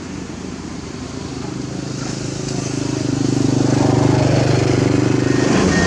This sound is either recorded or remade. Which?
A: recorded